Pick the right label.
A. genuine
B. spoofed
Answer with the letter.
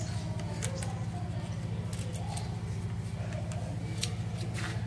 A